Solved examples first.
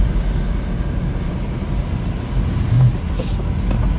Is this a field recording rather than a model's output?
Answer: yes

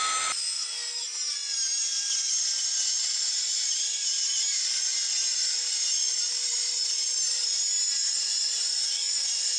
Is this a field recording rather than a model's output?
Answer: yes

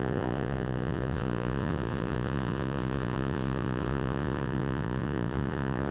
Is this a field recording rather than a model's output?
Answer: no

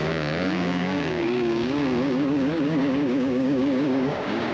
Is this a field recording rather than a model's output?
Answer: no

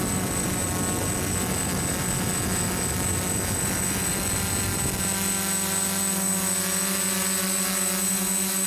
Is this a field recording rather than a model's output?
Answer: yes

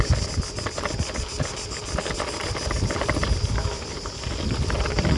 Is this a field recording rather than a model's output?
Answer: yes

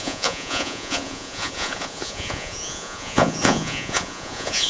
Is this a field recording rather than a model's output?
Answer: no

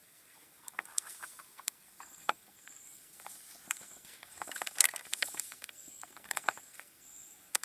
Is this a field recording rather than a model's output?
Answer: no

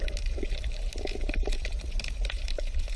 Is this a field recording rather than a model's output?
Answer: no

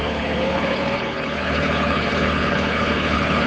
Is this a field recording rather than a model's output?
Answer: no